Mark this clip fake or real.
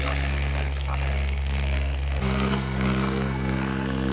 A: fake